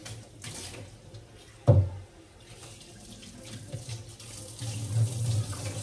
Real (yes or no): yes